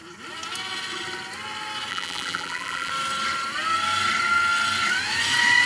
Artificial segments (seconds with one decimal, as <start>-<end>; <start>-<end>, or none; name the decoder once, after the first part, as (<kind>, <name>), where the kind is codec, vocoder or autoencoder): 1.9-2.9 (vocoder, BigVGAN v2)